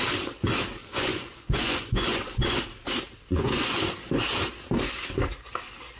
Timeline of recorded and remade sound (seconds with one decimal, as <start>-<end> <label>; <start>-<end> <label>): 0.0-0.8 recorded; 0.8-2.6 remade; 2.6-3.3 recorded; 3.3-3.8 remade; 3.8-6.0 recorded